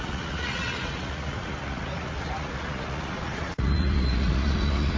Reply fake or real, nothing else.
fake